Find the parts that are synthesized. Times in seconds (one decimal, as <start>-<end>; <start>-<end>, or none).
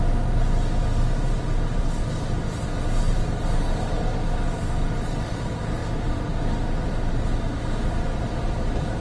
none